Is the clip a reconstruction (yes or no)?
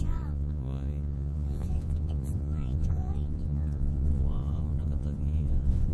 yes